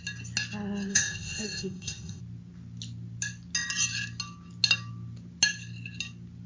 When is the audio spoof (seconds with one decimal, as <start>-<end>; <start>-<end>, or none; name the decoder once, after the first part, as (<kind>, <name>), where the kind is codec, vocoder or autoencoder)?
0.9-2.2 (codec, ZipCodec)